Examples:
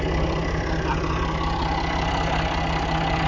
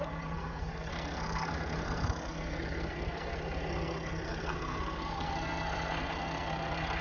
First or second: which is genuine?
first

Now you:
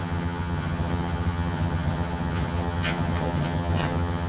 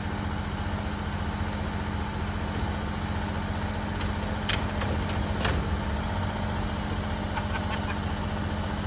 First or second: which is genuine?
second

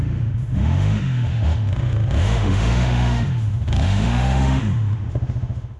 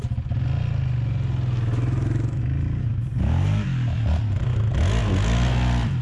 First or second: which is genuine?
second